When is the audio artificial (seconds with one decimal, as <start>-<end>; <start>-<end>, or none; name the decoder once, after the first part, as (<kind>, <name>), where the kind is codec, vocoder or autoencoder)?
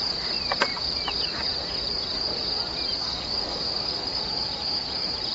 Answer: 3.1-4.2 (codec, DAC)